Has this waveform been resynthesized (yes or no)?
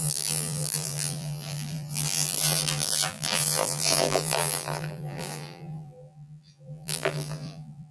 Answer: yes